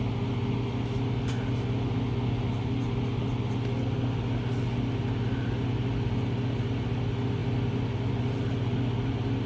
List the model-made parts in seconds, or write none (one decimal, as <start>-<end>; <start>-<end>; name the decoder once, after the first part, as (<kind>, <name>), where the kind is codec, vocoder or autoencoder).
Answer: none